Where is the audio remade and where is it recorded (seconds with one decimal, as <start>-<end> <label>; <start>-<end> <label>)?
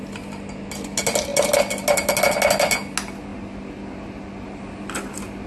0.0-5.5 recorded